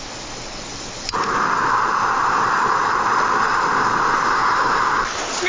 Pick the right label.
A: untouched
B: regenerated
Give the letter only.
A